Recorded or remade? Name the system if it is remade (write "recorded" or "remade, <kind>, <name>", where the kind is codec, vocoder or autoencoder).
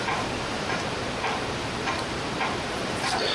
remade, vocoder, BigVGAN v2